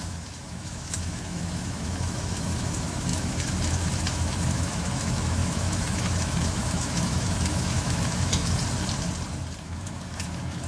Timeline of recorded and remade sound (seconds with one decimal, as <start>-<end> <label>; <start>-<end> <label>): 0.0-8.4 remade; 8.4-9.6 recorded; 9.6-10.7 remade